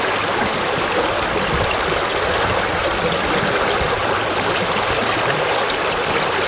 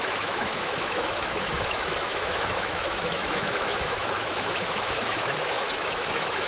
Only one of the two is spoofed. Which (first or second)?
second